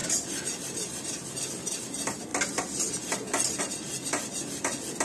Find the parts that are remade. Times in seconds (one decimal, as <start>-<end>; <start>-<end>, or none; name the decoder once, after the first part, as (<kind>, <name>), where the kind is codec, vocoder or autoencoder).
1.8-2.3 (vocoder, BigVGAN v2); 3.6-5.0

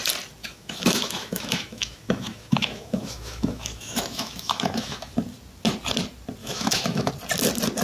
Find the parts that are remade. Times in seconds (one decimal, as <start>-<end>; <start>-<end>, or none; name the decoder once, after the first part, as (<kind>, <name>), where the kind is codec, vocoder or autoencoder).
0.4-5.1 (autoencoder, DAC-VAE); 6.4-7.1

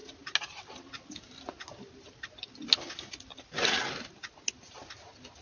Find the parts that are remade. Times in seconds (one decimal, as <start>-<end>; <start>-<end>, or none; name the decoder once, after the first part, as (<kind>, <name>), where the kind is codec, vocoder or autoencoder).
none

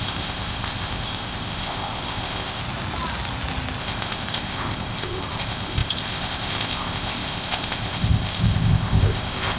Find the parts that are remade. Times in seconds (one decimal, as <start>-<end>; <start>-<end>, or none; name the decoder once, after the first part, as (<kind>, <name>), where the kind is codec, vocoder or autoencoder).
0.0-2.6 (codec, ZipCodec); 3.8-9.6

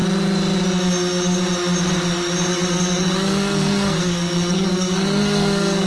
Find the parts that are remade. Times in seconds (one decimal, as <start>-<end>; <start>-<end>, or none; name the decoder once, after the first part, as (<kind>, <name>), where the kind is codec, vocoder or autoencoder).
2.5-5.9 (codec, SNAC)

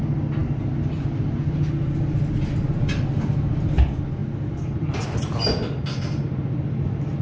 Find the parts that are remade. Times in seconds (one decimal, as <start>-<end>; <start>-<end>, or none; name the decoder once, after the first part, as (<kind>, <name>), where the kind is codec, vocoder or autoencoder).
none

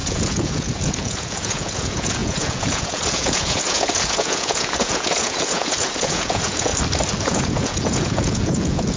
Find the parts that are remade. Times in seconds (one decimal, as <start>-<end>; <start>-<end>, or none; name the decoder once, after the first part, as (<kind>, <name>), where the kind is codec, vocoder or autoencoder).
0.0-6.7 (vocoder, Vocos); 7.2-9.0

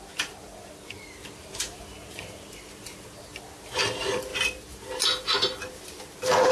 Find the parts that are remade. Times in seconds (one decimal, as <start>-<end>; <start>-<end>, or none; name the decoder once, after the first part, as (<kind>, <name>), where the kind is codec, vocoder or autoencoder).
none